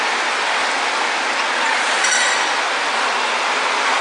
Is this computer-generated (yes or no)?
no